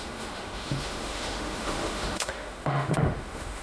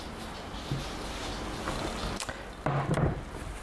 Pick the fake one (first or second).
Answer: first